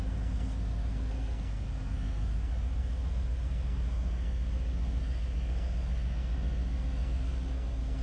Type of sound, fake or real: fake